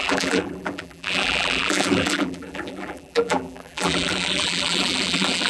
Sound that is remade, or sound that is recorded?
remade